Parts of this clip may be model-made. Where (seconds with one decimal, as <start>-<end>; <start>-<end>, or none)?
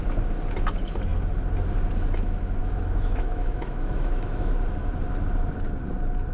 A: 2.6-4.5